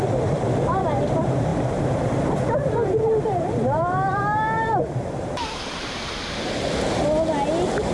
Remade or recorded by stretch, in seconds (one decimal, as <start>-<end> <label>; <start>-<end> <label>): 0.0-1.5 recorded; 1.5-6.2 remade; 6.2-7.9 recorded